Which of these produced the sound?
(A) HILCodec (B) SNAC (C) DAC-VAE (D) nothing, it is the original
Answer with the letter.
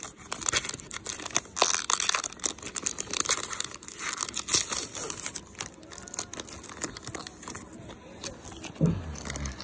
D